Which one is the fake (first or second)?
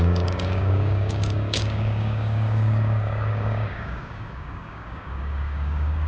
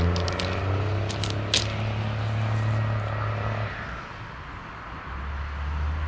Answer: first